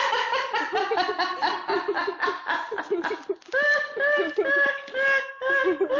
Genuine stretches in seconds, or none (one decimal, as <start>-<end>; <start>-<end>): 0.0-6.0